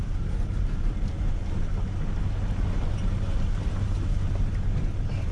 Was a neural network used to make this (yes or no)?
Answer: no